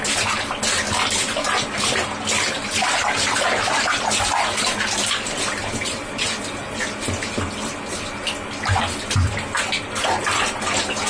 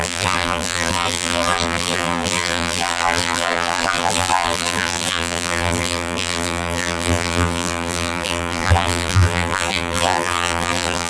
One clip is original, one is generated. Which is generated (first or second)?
second